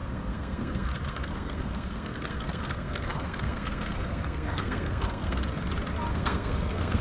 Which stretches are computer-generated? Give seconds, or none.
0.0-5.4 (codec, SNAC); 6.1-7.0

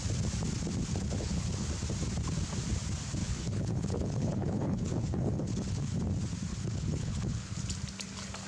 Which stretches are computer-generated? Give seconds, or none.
0.9-1.7 (codec, HILCodec); 3.2-6.0; 6.5-7.6